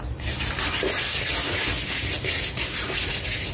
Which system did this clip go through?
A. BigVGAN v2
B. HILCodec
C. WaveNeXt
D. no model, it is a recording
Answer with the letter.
D